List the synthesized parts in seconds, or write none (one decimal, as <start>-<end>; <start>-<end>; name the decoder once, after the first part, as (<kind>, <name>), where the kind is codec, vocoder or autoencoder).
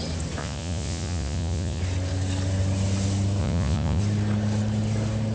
0.4-1.8 (vocoder, Vocos); 3.4-4.0